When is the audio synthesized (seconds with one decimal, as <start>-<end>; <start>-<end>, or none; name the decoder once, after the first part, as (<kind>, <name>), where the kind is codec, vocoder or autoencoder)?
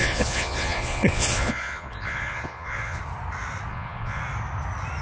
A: 0.0-3.0 (vocoder, Vocos); 3.7-4.2